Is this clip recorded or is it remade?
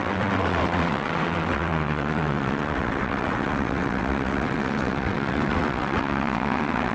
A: remade